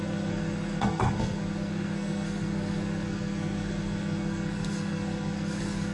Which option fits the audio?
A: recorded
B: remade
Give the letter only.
B